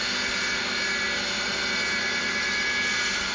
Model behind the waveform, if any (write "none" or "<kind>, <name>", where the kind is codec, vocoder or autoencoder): none